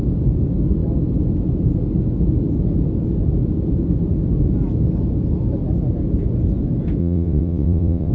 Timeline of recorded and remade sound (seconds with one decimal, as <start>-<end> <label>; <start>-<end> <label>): 0.0-7.0 recorded; 7.0-8.1 remade